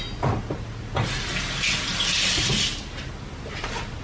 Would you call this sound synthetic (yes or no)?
no